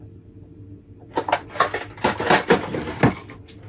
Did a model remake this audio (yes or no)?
no